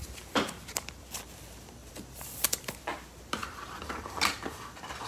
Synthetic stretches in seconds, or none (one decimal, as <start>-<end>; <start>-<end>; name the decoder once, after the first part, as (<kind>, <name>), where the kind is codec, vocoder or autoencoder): 0.0-1.1 (vocoder, BigVGAN v2); 1.8-2.8; 3.4-4.0